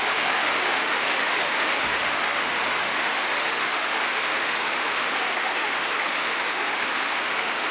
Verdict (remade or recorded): remade